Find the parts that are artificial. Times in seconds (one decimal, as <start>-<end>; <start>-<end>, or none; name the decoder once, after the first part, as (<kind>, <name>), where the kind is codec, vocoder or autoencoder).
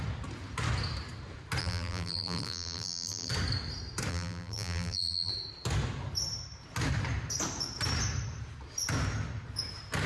1.6-3.3 (vocoder, BigVGAN v2); 4.1-5.3